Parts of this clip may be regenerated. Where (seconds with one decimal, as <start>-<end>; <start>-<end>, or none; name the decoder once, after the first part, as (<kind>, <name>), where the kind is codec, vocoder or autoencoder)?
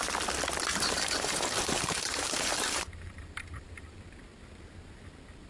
0.7-4.0 (vocoder, BigVGAN v2)